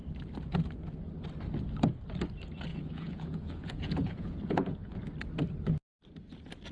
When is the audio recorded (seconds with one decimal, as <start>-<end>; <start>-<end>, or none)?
0.0-2.7; 5.1-6.7